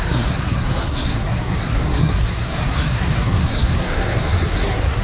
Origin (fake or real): fake